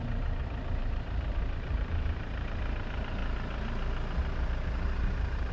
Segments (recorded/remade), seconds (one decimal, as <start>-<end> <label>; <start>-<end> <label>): 0.0-3.2 remade; 3.2-4.7 recorded; 4.7-5.5 remade